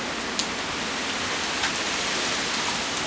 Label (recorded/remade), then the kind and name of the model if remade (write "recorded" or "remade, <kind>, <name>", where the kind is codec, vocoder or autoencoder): recorded